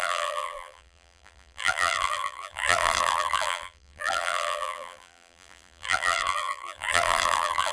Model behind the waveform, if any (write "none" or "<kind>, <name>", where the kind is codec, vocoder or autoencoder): vocoder, BigVGAN v2